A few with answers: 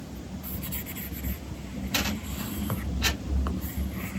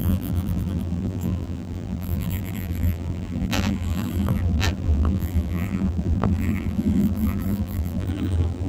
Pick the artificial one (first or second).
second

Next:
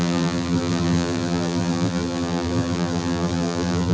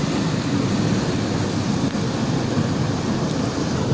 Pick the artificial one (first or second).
first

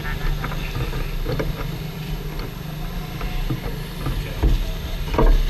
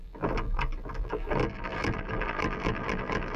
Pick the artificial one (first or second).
second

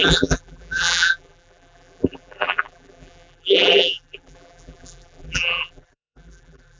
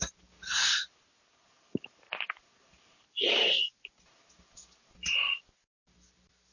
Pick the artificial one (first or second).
first